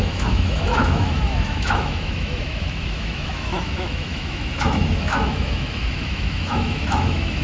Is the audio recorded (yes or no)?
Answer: no